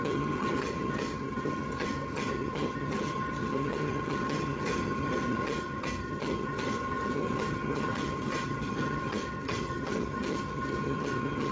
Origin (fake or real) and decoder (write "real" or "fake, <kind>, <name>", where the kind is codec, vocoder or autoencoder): fake, vocoder, HiFi-GAN